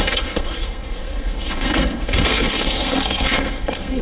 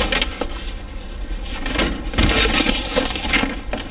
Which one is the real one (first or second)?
second